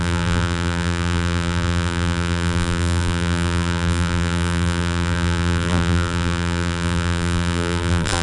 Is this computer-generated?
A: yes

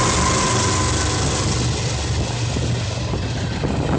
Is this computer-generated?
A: no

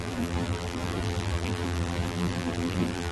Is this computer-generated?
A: yes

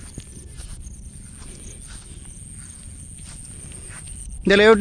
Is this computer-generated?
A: no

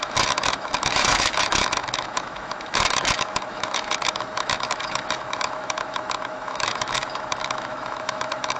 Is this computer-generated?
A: yes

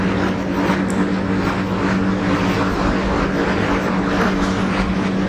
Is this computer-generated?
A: no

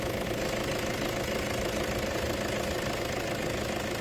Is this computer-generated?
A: no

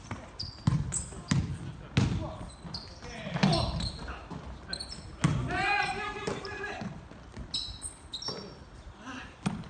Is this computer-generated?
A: no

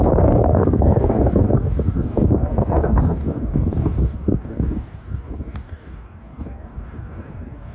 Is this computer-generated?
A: yes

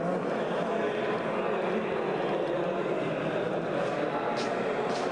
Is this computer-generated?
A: no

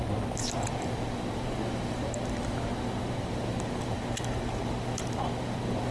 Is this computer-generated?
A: no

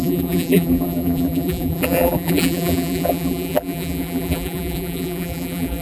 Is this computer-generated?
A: yes